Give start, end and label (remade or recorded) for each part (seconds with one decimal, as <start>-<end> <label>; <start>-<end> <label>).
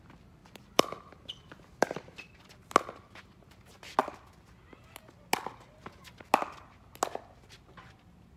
0.0-0.4 recorded; 0.4-2.3 remade; 2.3-8.4 recorded